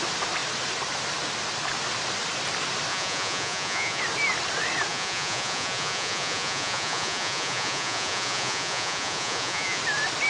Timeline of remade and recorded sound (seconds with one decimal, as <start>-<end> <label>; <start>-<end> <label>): 0.0-2.9 recorded; 2.9-4.0 remade; 4.0-4.9 recorded; 4.9-9.8 remade; 9.8-10.3 recorded